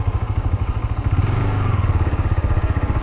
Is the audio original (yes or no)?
no